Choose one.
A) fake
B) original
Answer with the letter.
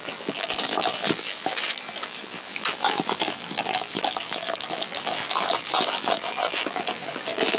A